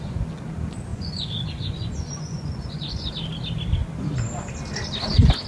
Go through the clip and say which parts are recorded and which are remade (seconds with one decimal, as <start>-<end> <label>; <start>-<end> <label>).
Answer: 0.0-0.9 recorded; 0.9-3.1 remade; 3.1-5.5 recorded